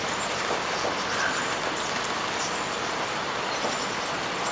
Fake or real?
real